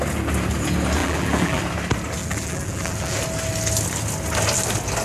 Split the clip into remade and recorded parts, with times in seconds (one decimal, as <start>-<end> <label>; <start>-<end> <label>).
0.0-1.0 recorded; 1.0-1.6 remade; 1.6-2.2 recorded; 2.2-3.2 remade; 3.2-5.0 recorded